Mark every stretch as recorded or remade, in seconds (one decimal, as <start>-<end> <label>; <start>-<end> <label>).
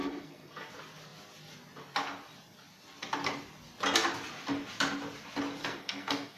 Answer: 0.0-0.7 remade; 0.7-5.6 recorded; 5.6-6.4 remade